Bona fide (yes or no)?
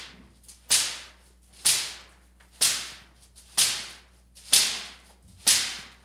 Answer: yes